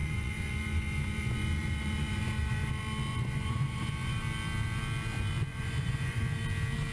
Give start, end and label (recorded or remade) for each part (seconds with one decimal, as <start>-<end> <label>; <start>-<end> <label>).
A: 0.0-2.7 remade; 2.7-3.1 recorded; 3.1-4.2 remade; 4.2-5.5 recorded; 5.5-6.2 remade; 6.2-6.9 recorded